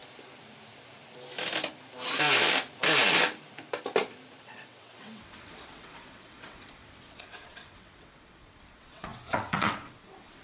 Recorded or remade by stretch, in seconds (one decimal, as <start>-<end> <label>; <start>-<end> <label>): 0.0-4.4 recorded; 4.4-10.4 remade